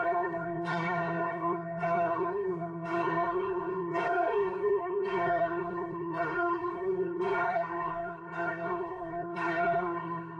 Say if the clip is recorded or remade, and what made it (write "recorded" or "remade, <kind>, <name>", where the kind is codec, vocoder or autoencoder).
remade, codec, SNAC